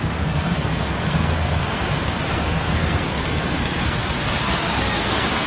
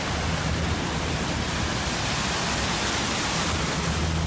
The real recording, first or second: second